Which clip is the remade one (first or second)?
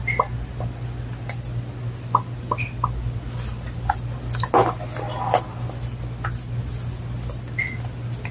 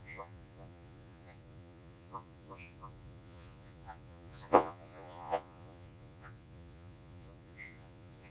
second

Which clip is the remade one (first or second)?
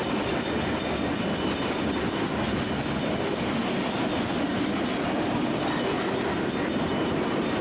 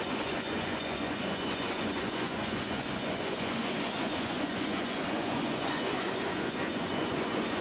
second